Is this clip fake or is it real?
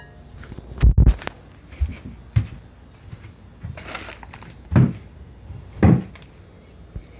real